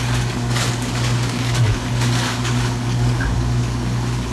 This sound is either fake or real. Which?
fake